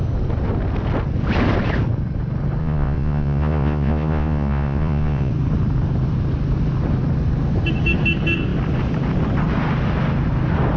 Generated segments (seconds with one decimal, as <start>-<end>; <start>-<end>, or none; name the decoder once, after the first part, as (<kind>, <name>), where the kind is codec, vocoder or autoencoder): 2.6-5.3 (vocoder, Vocos)